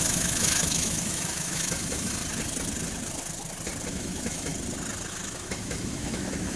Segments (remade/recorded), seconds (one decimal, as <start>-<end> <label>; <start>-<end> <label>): 0.0-2.2 remade; 2.2-3.9 recorded; 3.9-4.5 remade; 4.5-5.1 recorded; 5.1-6.6 remade